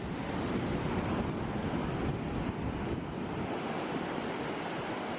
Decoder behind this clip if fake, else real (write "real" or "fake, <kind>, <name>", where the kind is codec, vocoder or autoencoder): real